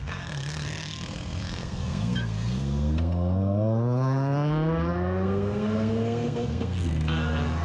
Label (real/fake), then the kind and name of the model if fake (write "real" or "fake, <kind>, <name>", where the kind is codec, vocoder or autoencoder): fake, codec, SNAC